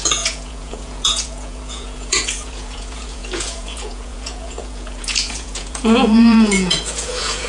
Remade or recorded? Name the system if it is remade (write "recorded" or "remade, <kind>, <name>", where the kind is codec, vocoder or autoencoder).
remade, vocoder, Vocos